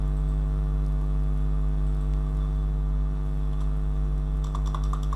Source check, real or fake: real